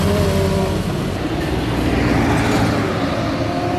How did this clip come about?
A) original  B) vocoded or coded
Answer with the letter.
A